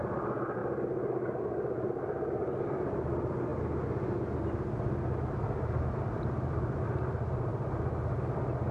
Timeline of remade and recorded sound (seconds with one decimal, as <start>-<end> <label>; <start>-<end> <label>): 0.0-0.6 remade; 0.6-1.4 recorded; 1.4-3.5 remade; 3.5-5.8 recorded; 5.8-7.5 remade; 7.5-8.2 recorded; 8.2-8.7 remade